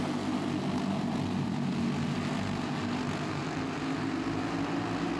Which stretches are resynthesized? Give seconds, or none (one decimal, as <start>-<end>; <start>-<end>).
none